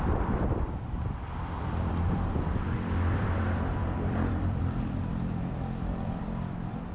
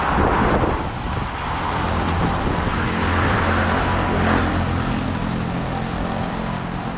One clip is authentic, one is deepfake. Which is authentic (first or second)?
second